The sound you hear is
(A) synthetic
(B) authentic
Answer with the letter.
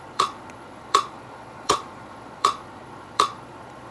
A